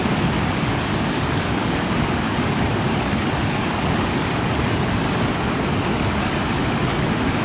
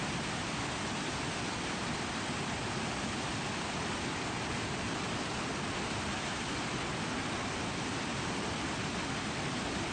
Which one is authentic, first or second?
second